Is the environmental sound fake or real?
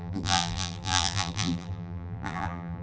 fake